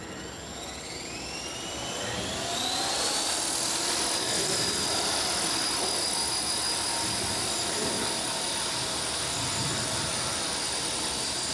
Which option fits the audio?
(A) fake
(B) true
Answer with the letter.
B